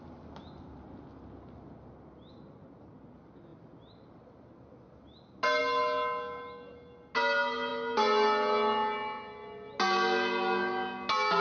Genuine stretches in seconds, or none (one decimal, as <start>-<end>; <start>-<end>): 0.0-11.4